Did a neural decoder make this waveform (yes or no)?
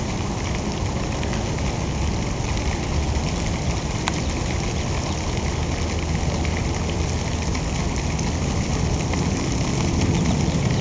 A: no